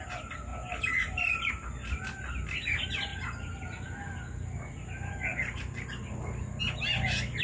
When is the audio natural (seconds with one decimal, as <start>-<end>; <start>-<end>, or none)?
0.0-0.5; 1.5-3.1; 4.0-7.4